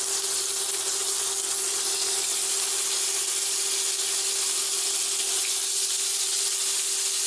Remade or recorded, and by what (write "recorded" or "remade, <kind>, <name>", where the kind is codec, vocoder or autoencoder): recorded